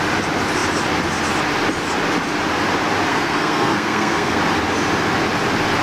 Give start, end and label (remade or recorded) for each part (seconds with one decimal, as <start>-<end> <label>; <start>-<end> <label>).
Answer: 0.0-3.1 recorded; 3.1-4.4 remade; 4.4-5.8 recorded